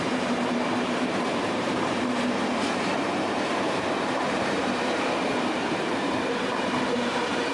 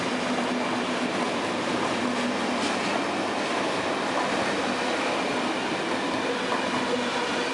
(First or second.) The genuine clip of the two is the second